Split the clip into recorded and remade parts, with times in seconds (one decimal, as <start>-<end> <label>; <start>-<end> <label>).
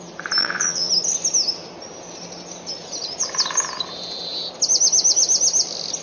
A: 0.0-0.4 recorded; 0.4-0.9 remade; 0.9-6.0 recorded